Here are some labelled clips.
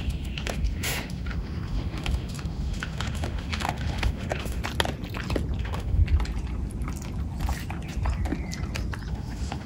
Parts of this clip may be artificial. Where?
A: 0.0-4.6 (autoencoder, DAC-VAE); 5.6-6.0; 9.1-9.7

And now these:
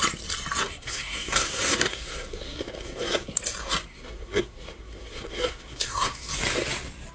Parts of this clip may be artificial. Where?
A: 0.6-3.4 (codec, SNAC); 3.9-6.3